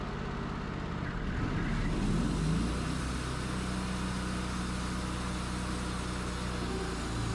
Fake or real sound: real